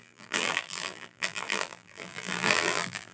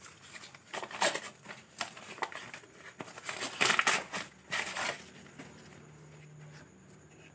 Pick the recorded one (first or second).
second